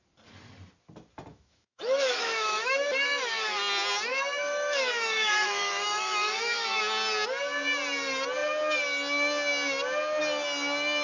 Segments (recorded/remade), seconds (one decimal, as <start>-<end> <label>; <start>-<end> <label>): 0.0-1.3 recorded; 1.3-3.6 remade; 3.6-4.1 recorded; 4.1-6.8 remade; 6.8-11.0 recorded